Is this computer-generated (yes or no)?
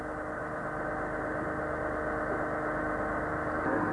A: no